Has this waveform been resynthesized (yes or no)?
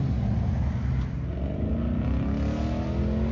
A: no